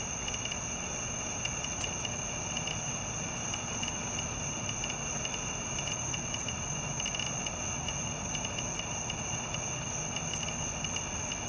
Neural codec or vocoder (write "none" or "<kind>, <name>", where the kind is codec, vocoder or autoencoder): none